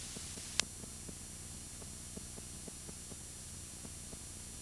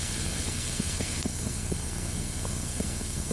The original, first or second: first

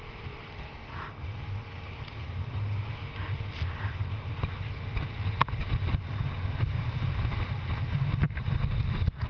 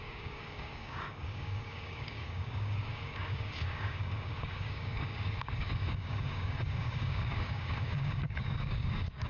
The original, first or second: first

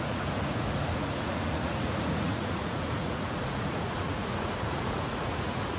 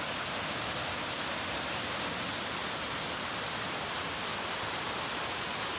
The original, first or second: second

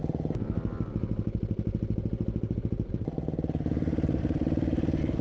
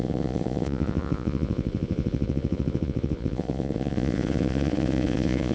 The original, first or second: first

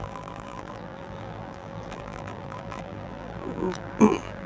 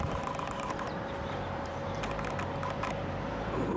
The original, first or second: second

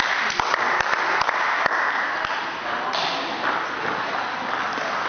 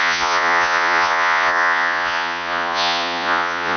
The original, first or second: first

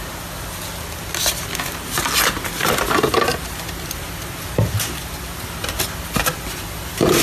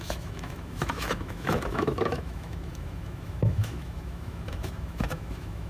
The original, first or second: first